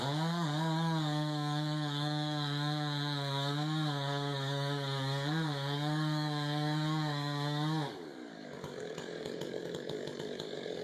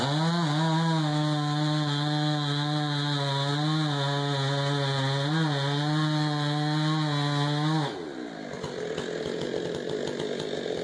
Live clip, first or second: second